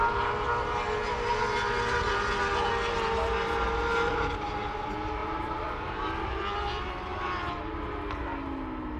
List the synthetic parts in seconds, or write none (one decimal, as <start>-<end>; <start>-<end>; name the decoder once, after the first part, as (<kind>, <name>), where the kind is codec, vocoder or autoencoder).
5.2-6.4 (vocoder, BigVGAN v2)